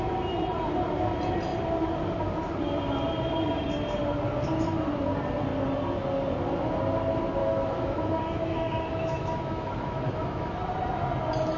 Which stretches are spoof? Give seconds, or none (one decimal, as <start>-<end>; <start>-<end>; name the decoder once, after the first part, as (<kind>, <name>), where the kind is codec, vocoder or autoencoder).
7.4-10.6 (autoencoder, DAC-VAE)